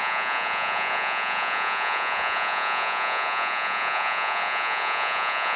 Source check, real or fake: fake